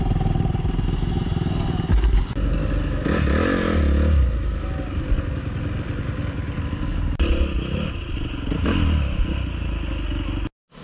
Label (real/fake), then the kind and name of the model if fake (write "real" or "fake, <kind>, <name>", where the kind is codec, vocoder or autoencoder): real